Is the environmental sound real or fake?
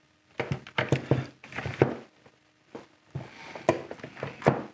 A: real